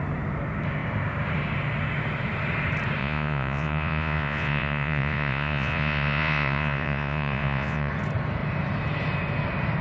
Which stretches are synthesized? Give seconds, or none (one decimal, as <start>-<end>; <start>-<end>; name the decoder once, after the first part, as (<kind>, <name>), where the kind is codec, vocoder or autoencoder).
3.0-7.9 (vocoder, Vocos)